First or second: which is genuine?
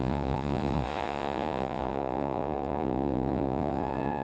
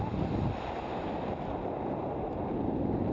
second